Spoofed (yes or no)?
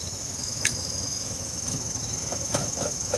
yes